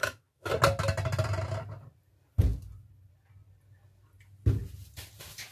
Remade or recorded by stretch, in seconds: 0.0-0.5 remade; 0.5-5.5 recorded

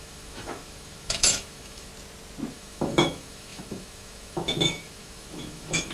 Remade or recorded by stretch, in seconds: 0.0-1.9 remade; 1.9-2.5 recorded; 2.5-5.9 remade

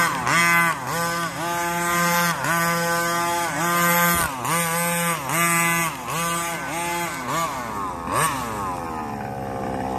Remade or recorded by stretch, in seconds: 0.0-10.0 recorded

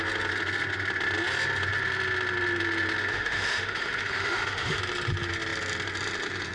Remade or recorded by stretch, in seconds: 0.0-3.1 recorded; 3.1-4.8 remade; 4.8-6.5 recorded

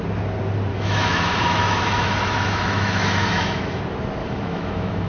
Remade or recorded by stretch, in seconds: 0.0-0.7 recorded; 0.7-3.8 remade; 3.8-4.2 recorded; 4.2-5.1 remade

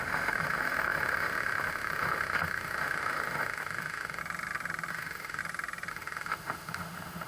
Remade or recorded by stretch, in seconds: 0.0-4.2 remade; 4.2-4.9 recorded; 4.9-5.4 remade; 5.4-5.9 recorded; 5.9-7.3 remade

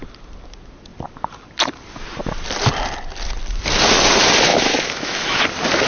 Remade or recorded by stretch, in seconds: 0.0-4.5 recorded; 4.5-5.4 remade; 5.4-5.9 recorded

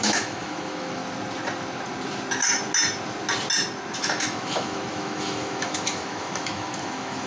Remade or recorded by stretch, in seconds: 0.0-1.0 remade; 1.0-4.0 recorded; 4.0-7.3 remade